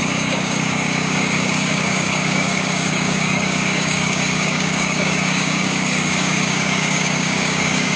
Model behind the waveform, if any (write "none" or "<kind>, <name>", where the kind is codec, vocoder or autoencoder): codec, DAC